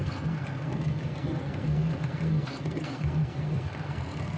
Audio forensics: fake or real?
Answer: fake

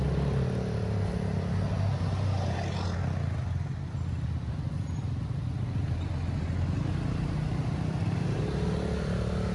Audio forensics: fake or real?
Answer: real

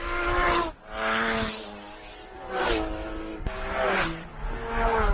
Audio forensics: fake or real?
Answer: real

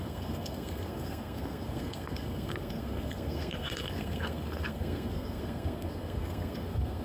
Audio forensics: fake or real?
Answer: fake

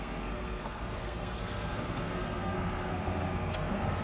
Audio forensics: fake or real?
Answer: fake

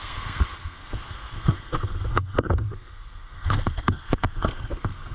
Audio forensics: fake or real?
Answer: fake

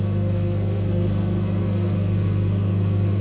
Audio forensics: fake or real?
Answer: fake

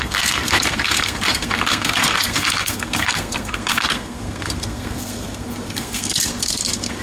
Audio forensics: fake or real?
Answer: fake